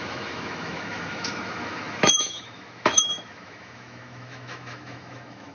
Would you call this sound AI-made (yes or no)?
yes